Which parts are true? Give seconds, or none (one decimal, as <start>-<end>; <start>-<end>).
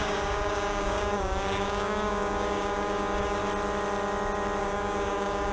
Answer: 3.4-4.6